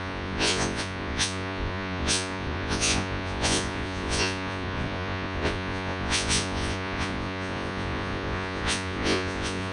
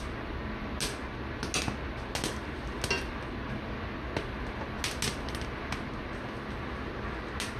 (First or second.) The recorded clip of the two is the second